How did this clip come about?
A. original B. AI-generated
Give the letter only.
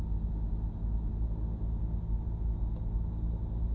A